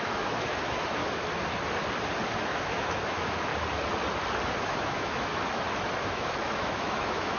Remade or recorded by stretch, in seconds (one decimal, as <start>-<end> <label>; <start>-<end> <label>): 0.0-1.0 remade; 1.0-2.4 recorded; 2.4-3.5 remade; 3.5-4.6 recorded; 4.6-5.3 remade; 5.3-6.0 recorded; 6.0-7.4 remade